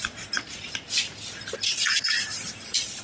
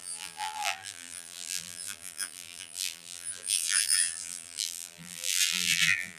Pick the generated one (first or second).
second